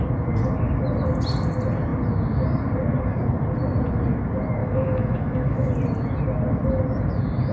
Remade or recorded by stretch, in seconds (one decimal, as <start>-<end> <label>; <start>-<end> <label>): 0.0-4.6 recorded; 4.6-5.7 remade; 5.7-7.5 recorded